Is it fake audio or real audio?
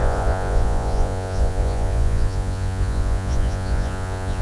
fake